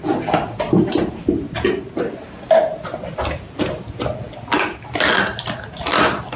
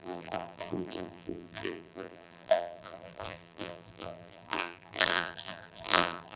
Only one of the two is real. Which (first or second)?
first